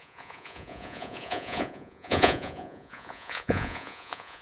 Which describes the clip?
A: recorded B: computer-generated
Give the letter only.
B